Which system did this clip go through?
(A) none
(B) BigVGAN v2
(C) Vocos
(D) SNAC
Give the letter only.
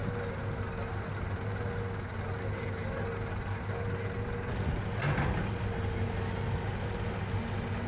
A